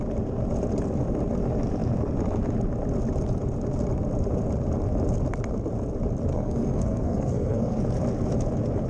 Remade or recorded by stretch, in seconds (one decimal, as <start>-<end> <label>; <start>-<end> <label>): 0.0-6.3 recorded; 6.3-7.8 remade; 7.8-8.9 recorded